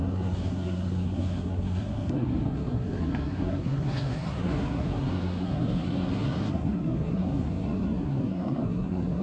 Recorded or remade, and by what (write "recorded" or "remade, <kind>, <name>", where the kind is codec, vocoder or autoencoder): remade, codec, SNAC